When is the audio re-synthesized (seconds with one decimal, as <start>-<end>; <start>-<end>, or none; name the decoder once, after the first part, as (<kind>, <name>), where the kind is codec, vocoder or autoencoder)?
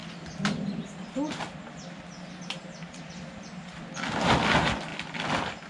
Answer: none